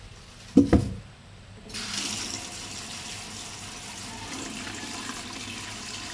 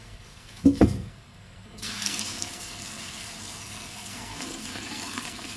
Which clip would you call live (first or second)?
first